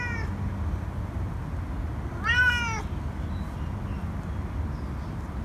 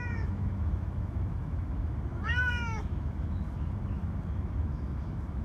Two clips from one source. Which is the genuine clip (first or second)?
first